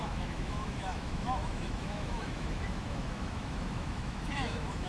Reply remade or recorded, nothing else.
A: remade